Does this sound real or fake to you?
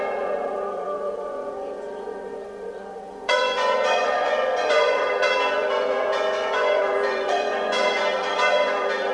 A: fake